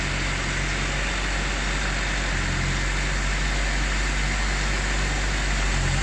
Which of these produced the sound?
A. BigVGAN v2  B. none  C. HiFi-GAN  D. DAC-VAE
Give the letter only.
B